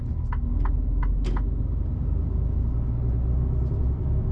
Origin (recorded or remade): recorded